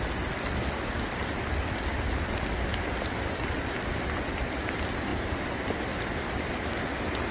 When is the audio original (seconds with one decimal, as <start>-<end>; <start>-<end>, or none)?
0.0-7.3